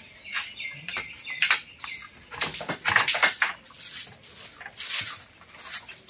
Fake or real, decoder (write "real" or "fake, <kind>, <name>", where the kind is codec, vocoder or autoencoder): real